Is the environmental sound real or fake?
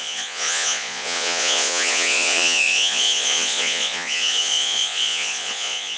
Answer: fake